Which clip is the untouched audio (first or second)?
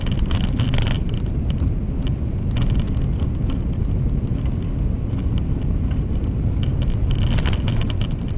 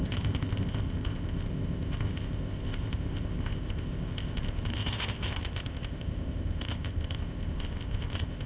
first